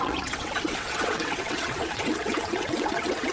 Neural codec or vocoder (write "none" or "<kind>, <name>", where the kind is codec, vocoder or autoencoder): vocoder, WaveNeXt